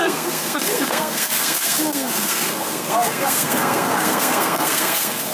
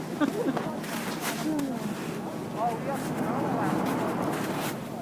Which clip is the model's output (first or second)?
first